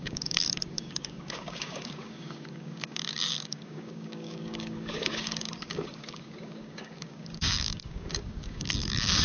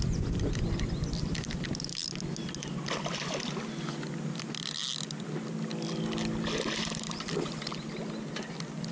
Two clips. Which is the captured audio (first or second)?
second